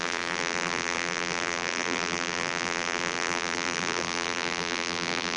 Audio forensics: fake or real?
fake